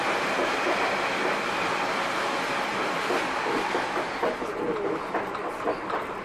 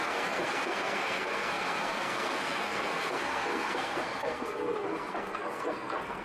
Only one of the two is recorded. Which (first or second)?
first